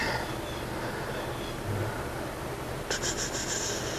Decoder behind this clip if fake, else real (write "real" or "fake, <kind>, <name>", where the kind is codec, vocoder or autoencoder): real